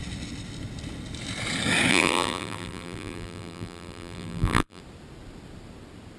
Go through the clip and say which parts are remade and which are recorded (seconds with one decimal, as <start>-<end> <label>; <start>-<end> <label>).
0.0-1.9 recorded; 1.9-4.8 remade; 4.8-6.2 recorded

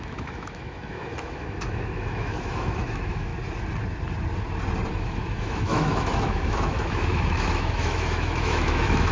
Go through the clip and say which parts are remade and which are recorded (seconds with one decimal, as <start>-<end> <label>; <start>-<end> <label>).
0.0-3.3 remade; 3.3-4.9 recorded; 4.9-9.1 remade

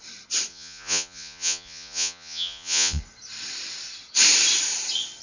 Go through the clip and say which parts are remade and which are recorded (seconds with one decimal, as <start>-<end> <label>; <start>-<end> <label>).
0.0-0.5 recorded; 0.5-3.0 remade; 3.0-5.2 recorded

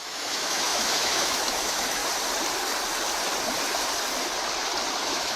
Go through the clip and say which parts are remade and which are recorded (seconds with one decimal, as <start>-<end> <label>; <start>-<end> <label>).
0.0-2.0 remade; 2.0-5.0 recorded; 5.0-5.4 remade